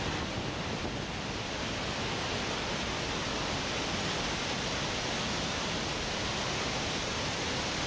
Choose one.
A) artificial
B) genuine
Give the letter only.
B